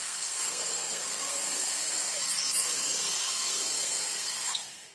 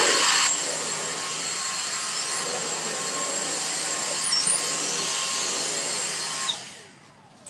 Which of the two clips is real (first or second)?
second